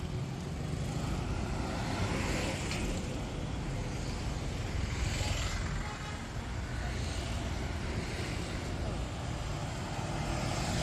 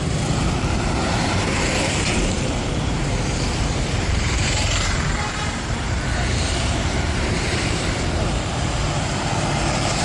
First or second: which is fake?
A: second